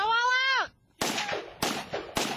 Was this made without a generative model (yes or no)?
yes